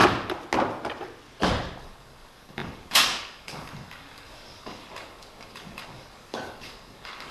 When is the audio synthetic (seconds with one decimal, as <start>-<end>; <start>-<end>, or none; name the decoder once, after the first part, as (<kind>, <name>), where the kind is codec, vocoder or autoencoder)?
1.8-7.3 (codec, DAC)